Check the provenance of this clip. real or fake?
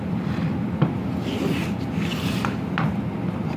real